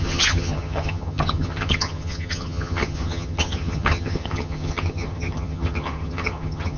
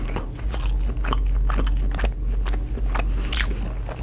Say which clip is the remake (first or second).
first